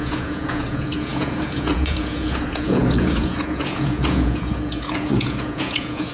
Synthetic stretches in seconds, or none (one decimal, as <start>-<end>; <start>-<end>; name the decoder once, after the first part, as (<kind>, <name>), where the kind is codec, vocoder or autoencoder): 0.0-6.1 (vocoder, Vocos)